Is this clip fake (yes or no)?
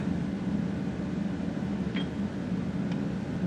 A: no